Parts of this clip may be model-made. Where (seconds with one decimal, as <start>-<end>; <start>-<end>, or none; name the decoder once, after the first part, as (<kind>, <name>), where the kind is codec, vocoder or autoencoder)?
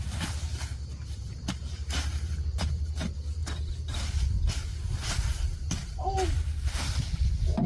0.0-3.4 (vocoder, BigVGAN v2); 6.3-7.7